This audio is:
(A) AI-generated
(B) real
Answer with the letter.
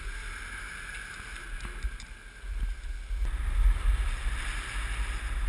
B